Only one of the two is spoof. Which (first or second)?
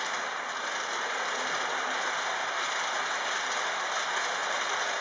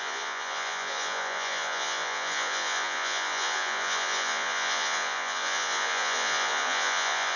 second